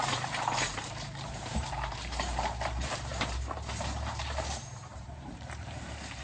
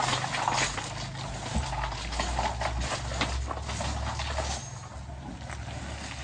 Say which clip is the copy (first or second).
first